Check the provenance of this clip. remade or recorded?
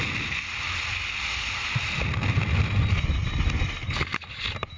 recorded